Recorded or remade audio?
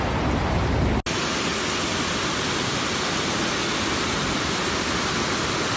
recorded